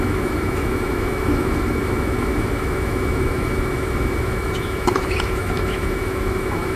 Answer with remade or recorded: remade